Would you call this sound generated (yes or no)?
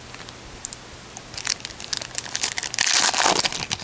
no